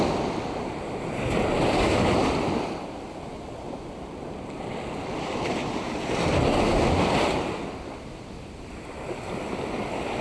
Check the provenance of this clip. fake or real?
real